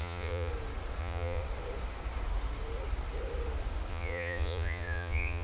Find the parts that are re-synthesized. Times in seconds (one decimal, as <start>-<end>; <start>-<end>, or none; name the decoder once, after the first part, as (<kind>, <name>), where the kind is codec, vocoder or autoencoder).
0.0-0.5 (vocoder, Vocos); 1.0-1.4; 3.9-5.4